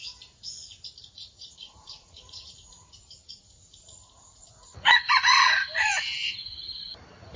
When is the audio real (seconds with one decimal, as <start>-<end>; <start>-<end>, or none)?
0.0-1.1